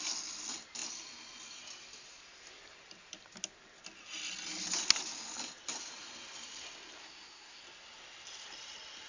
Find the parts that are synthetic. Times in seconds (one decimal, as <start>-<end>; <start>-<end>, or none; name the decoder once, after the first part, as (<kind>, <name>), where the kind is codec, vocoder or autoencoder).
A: 7.0-7.6 (codec, SNAC)